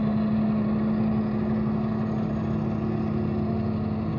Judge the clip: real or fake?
real